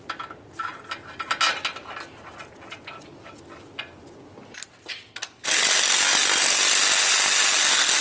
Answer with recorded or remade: recorded